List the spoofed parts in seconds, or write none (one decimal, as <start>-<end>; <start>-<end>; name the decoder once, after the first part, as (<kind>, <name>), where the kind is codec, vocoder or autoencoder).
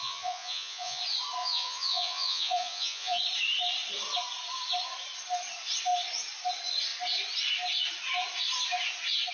0.0-1.0 (vocoder, Vocos); 1.4-3.2